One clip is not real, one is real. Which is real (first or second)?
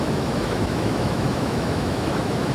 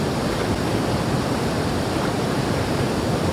second